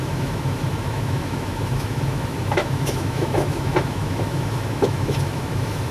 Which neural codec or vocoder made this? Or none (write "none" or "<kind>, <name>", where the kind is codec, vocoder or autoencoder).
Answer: autoencoder, DAC-VAE